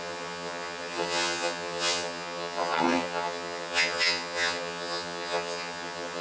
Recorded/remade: remade